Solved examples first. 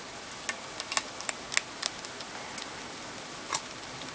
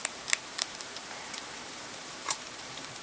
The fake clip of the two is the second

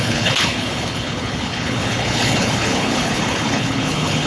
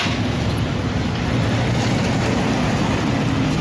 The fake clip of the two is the first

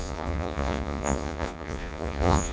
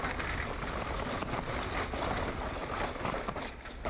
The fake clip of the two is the first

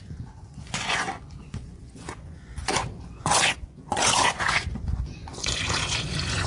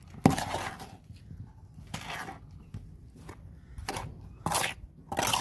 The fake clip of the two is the first